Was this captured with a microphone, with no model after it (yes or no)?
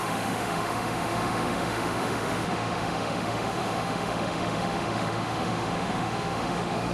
no